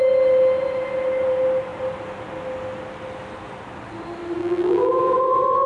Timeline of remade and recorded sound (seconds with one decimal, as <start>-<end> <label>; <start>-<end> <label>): 0.0-4.4 recorded; 4.4-4.9 remade; 4.9-5.7 recorded